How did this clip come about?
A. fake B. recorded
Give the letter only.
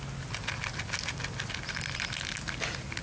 B